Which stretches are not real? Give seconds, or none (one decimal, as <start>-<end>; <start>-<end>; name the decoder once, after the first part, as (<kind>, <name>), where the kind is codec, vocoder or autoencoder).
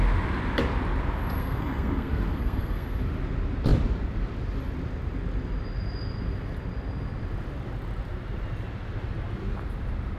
1.4-3.0 (codec, SNAC)